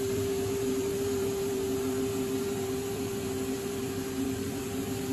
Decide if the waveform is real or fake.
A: fake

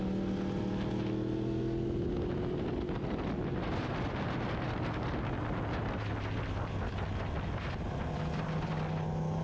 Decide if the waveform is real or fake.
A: real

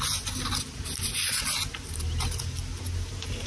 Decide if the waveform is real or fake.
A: real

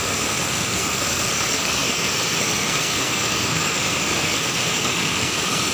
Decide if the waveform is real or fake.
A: fake